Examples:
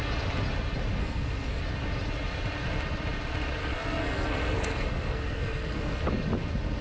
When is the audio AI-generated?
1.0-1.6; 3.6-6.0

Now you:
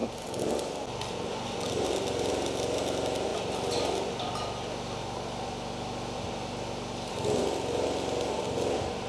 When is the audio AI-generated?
none

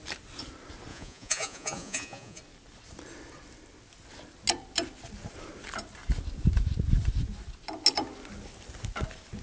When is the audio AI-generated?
0.9-2.4